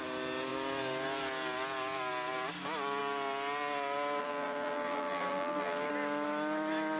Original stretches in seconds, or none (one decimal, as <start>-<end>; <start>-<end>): 0.0-4.2; 5.9-7.0